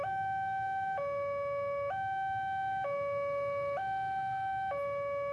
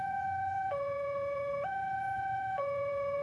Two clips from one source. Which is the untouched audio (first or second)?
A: first